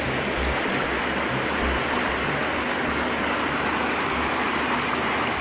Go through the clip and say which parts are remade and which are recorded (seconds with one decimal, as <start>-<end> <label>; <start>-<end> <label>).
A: 0.0-5.4 recorded